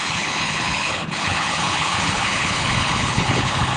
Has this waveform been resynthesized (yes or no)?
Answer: yes